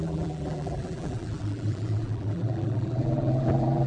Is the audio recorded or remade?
remade